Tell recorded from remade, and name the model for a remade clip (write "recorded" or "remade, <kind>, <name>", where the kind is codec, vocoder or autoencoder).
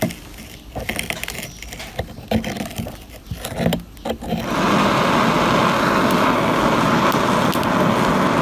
recorded